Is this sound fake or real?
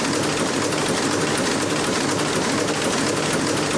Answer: real